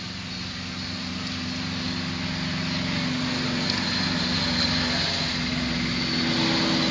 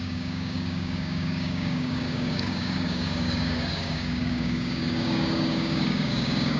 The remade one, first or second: second